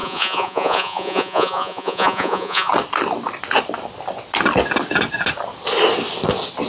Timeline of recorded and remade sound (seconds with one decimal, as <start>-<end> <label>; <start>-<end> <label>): 0.0-2.7 remade; 2.7-6.7 recorded